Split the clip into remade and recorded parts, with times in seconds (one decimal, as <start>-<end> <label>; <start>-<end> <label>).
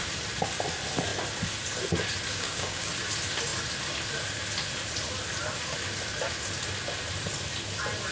0.0-2.3 recorded; 2.3-2.9 remade; 2.9-8.1 recorded